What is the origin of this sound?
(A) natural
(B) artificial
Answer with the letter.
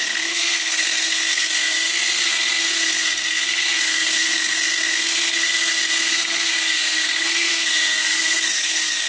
B